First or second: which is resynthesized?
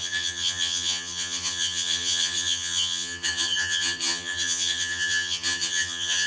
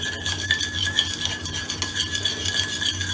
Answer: first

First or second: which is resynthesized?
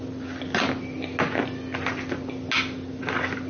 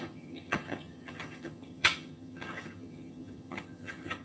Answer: second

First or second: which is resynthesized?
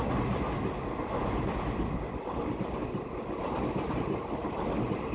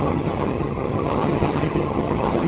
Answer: second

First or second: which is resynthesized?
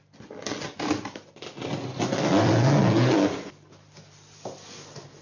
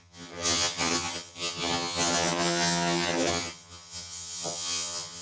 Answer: second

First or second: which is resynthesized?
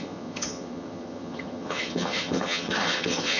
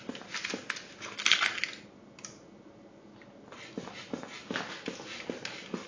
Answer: first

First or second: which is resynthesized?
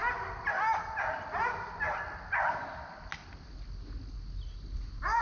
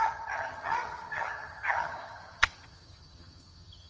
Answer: second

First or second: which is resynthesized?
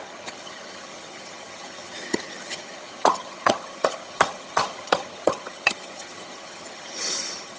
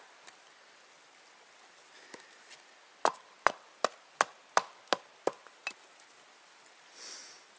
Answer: first